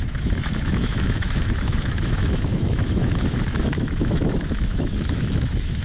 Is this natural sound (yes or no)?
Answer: no